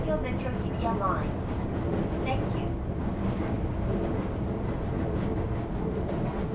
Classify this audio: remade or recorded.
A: recorded